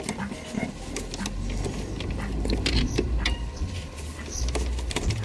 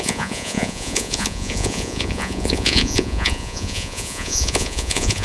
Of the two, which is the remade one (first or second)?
second